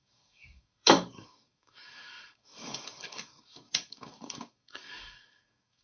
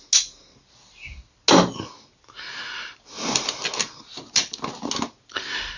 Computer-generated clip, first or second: first